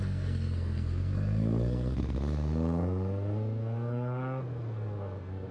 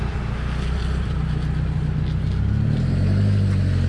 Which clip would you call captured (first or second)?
second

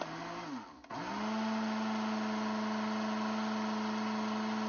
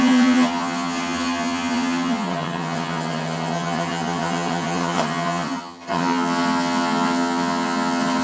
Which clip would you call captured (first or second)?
first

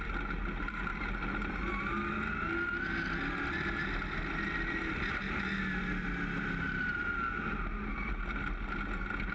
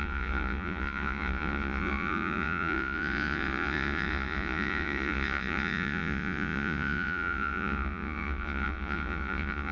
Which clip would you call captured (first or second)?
first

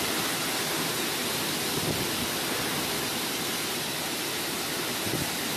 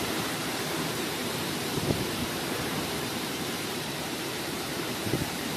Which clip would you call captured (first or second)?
first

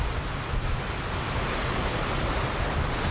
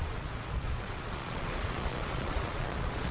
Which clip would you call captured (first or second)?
first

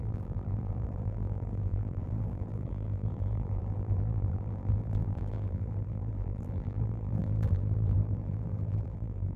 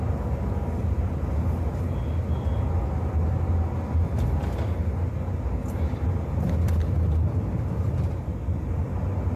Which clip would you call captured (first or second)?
second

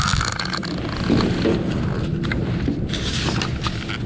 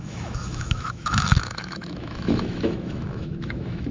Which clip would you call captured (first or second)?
first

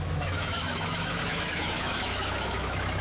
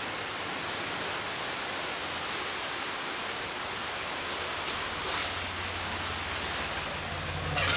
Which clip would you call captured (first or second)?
second